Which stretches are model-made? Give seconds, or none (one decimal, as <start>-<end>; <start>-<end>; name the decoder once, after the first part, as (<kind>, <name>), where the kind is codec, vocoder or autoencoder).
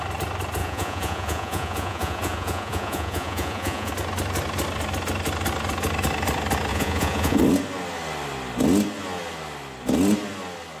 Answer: 0.6-3.9 (vocoder, Vocos); 6.7-7.4